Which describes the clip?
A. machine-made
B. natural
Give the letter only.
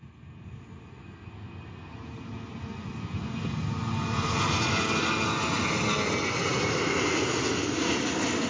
B